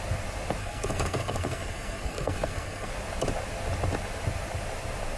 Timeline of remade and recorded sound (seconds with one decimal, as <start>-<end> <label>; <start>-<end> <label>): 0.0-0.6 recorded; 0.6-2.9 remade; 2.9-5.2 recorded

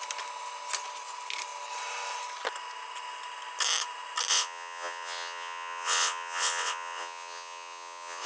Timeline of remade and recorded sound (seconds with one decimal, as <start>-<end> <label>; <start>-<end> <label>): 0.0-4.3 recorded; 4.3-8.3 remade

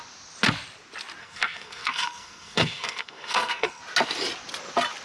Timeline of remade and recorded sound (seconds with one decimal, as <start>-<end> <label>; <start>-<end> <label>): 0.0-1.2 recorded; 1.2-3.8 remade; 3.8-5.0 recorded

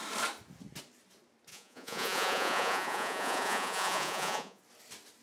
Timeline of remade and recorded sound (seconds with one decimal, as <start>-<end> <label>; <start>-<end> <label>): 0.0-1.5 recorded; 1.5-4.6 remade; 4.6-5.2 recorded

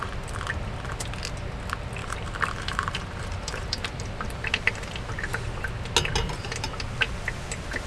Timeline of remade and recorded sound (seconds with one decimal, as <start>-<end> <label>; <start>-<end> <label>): 0.0-2.0 recorded; 2.0-4.9 remade; 4.9-7.9 recorded